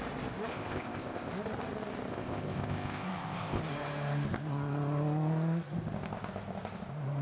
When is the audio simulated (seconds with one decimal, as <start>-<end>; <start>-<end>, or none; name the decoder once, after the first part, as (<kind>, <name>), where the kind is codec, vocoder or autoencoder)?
0.5-1.3 (codec, ZipCodec); 2.1-3.6